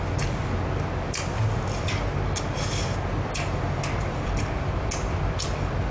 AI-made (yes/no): no